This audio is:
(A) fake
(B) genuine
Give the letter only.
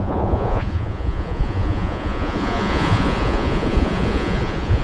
A